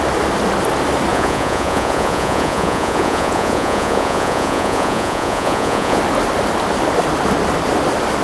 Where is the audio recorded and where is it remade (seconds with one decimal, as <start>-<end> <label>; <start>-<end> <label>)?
0.0-1.1 recorded; 1.1-6.0 remade; 6.0-8.2 recorded